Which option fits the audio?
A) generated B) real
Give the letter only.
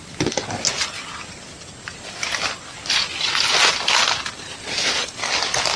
B